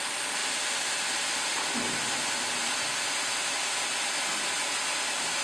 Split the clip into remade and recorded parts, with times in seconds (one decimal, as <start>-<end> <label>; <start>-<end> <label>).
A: 0.0-5.4 recorded